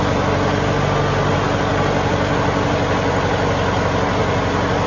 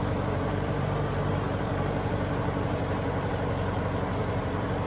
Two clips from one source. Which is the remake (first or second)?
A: second